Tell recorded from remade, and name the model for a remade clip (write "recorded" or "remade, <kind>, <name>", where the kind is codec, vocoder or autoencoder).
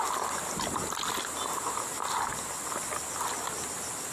recorded